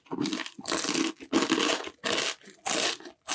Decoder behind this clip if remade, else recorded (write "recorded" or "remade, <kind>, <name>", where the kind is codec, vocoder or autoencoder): recorded